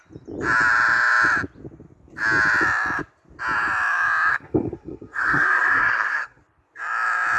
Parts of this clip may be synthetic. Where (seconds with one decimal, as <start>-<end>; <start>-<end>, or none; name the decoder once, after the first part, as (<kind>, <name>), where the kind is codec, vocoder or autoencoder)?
4.3-6.4 (codec, SNAC)